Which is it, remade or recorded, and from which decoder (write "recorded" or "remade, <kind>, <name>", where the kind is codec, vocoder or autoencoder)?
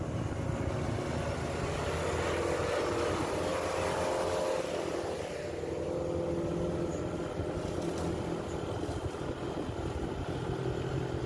recorded